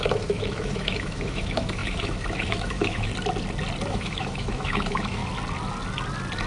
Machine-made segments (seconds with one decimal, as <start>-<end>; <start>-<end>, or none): 0.0-3.1; 3.9-5.2